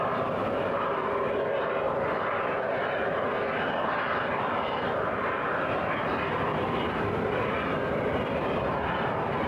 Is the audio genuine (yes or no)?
yes